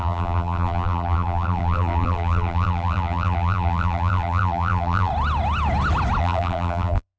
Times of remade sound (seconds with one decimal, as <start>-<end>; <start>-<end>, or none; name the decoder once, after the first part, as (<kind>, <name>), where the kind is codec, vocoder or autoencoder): 0.0-5.1 (vocoder, BigVGAN v2); 6.2-7.2